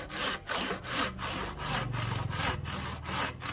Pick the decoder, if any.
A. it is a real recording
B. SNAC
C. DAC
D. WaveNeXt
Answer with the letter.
A